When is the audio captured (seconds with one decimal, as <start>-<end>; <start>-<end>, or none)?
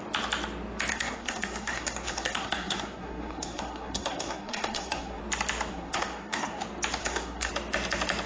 0.0-0.9; 5.2-5.7; 6.6-7.0; 7.5-8.3